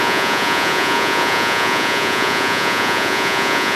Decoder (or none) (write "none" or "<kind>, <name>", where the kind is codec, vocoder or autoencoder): vocoder, Vocos